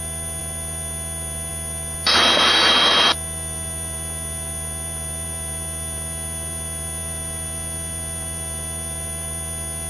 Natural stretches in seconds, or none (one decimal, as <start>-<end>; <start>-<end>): 0.0-9.9

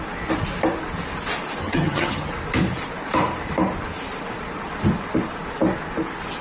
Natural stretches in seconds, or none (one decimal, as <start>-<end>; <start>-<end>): 0.0-1.6; 2.3-6.4